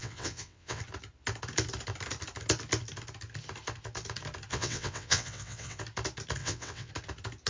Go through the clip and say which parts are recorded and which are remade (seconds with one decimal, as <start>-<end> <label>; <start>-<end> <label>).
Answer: 0.0-0.8 remade; 0.8-4.5 recorded; 4.5-5.8 remade; 5.8-6.4 recorded; 6.4-6.9 remade; 6.9-7.5 recorded